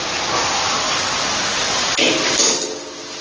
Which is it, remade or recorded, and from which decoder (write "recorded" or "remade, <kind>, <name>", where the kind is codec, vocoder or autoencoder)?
recorded